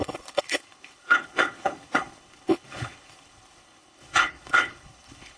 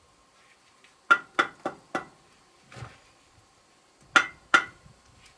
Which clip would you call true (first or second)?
second